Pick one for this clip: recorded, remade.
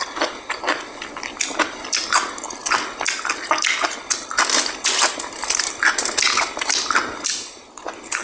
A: recorded